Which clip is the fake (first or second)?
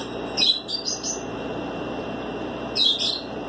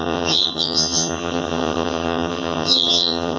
second